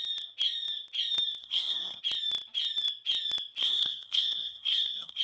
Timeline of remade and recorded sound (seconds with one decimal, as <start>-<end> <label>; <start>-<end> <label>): 0.0-1.4 recorded; 1.4-2.0 remade; 2.0-3.6 recorded; 3.6-5.2 remade